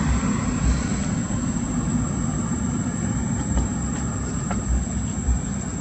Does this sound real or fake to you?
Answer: fake